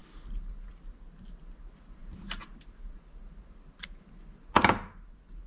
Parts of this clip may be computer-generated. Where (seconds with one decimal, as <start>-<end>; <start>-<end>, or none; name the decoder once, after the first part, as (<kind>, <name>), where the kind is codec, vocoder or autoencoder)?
none